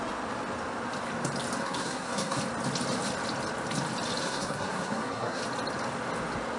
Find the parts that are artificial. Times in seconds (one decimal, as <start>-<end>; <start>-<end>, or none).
1.6-2.4; 4.2-5.4